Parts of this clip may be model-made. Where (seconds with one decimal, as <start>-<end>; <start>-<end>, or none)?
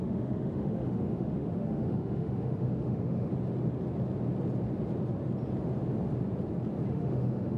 0.0-3.3; 6.9-7.6